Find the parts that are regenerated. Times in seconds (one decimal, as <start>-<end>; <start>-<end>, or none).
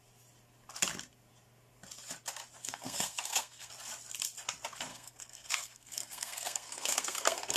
2.6-3.7; 4.9-7.6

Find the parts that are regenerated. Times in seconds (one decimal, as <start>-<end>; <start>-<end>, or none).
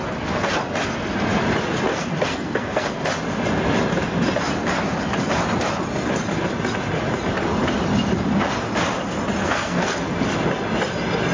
1.9-3.0; 9.4-10.0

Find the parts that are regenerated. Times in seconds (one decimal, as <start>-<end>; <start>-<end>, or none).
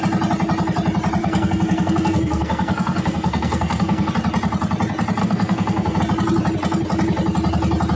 1.2-4.1; 5.2-6.0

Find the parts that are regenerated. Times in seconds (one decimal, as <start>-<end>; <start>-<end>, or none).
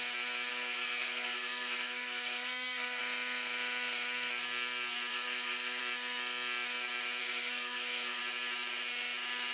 0.5-3.0; 5.1-5.8; 7.2-8.2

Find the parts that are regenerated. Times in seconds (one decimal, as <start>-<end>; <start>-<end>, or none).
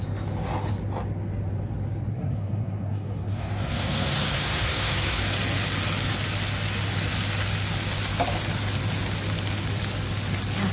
2.1-5.2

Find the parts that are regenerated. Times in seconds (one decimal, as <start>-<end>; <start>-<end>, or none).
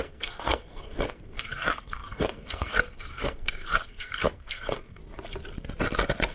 0.0-5.0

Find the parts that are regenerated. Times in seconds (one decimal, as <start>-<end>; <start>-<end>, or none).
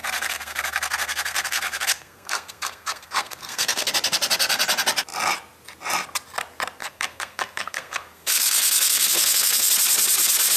0.0-3.9; 6.8-9.7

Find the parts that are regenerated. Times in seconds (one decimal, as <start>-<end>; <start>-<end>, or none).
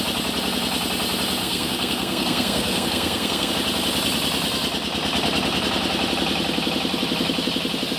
1.4-3.5